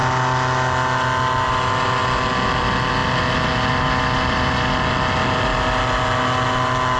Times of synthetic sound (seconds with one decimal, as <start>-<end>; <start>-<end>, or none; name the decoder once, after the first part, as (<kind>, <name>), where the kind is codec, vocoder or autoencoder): none